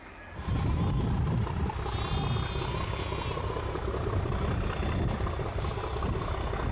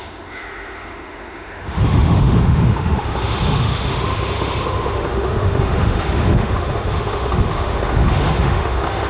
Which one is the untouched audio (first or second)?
first